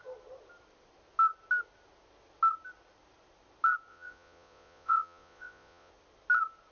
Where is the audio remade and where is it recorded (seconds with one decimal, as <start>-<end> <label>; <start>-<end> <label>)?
0.0-3.9 recorded; 3.9-5.9 remade; 5.9-6.7 recorded